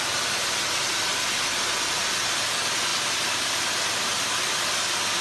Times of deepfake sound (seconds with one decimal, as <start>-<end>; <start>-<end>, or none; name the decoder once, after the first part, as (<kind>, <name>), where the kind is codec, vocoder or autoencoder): none